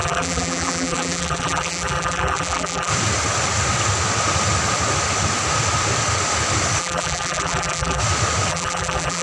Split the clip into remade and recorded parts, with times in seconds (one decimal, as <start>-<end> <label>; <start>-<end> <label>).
0.0-2.9 remade; 2.9-6.8 recorded; 6.8-8.0 remade; 8.0-8.5 recorded; 8.5-9.2 remade

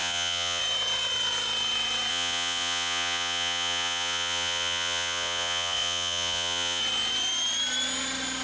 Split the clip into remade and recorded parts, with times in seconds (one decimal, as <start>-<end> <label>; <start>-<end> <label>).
0.0-0.6 remade; 0.6-2.1 recorded; 2.1-6.8 remade; 6.8-8.4 recorded